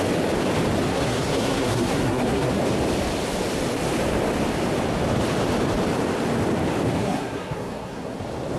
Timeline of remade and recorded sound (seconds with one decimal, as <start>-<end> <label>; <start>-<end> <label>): 0.0-0.9 recorded; 0.9-2.6 remade; 2.6-7.0 recorded; 7.0-8.2 remade; 8.2-8.6 recorded

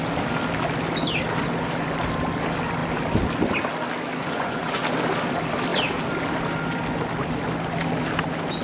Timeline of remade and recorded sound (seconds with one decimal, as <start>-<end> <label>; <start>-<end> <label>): 0.0-4.2 recorded; 4.2-4.8 remade; 4.8-8.6 recorded

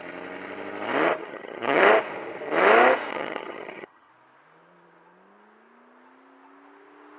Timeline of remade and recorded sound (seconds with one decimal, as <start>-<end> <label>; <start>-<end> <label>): 0.0-1.2 recorded; 1.2-1.8 remade; 1.8-3.1 recorded; 3.1-4.1 remade; 4.1-7.2 recorded

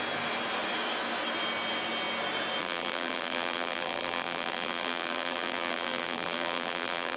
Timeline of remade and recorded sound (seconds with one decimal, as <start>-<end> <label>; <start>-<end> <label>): 0.0-2.6 recorded; 2.6-7.2 remade

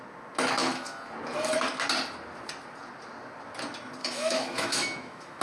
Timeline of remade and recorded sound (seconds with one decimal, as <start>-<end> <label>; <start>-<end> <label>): 0.0-4.0 recorded; 4.0-5.4 remade